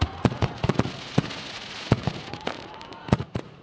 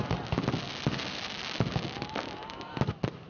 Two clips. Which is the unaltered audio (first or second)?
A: second